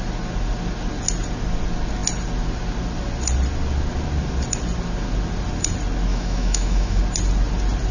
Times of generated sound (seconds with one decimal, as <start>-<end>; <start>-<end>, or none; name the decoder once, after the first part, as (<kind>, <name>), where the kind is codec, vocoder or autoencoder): 6.1-7.0 (autoencoder, DAC-VAE)